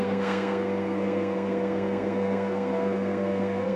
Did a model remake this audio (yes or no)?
yes